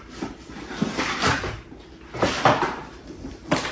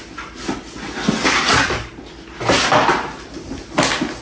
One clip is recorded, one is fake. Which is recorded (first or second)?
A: second